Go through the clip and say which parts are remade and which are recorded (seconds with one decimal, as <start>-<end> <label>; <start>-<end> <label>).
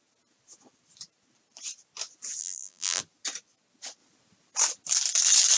0.0-2.4 recorded; 2.4-3.0 remade; 3.0-5.6 recorded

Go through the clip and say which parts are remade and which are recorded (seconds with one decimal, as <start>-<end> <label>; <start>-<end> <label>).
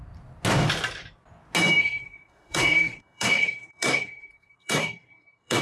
0.0-1.8 recorded; 1.8-5.6 remade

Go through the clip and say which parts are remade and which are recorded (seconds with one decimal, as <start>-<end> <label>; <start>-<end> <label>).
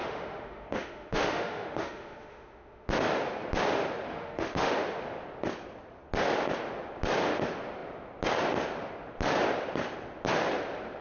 0.0-2.9 remade; 2.9-4.1 recorded; 4.1-4.7 remade; 4.7-11.0 recorded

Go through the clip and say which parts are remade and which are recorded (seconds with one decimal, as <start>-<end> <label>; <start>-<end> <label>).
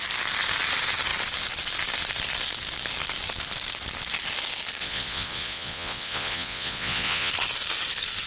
0.0-4.8 recorded; 4.8-7.3 remade; 7.3-8.3 recorded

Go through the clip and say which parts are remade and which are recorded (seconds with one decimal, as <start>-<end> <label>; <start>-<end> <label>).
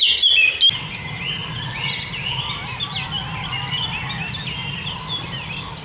0.0-5.8 recorded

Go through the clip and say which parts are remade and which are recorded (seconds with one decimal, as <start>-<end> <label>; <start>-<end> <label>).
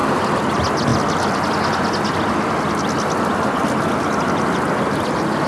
0.0-5.5 recorded